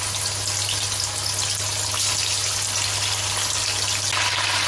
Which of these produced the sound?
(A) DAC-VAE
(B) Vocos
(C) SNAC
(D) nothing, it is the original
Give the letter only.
D